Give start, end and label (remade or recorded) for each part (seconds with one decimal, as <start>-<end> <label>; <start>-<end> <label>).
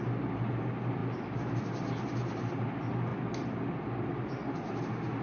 0.0-5.2 recorded